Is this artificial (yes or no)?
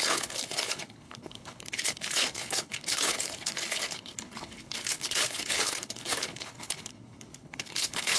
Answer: yes